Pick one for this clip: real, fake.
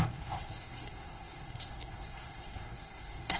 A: fake